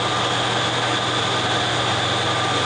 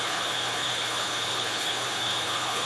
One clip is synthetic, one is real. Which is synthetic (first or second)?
second